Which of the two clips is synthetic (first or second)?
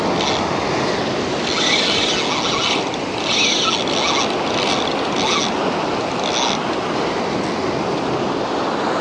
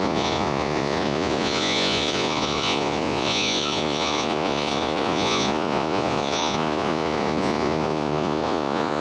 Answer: second